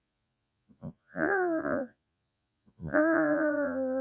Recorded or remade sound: remade